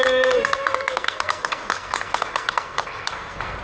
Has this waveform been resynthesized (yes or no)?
yes